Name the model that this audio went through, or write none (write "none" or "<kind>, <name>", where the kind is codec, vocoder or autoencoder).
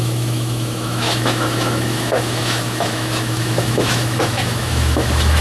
autoencoder, DAC-VAE